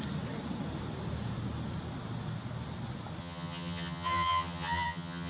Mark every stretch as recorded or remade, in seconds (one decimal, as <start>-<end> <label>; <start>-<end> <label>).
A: 0.0-3.2 recorded; 3.2-5.3 remade